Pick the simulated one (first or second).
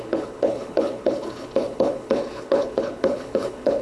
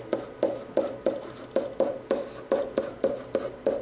first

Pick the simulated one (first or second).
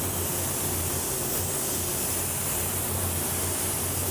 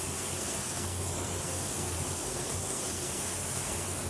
second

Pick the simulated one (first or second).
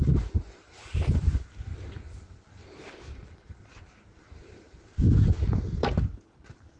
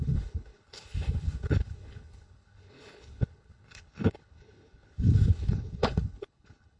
second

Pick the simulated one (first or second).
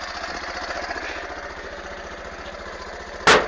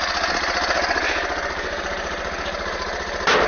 second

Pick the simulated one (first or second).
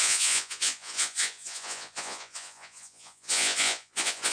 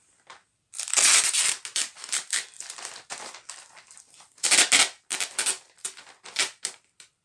first